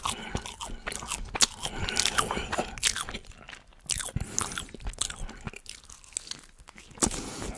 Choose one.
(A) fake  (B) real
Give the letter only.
B